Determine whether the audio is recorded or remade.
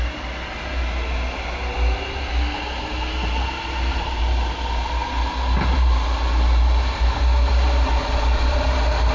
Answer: recorded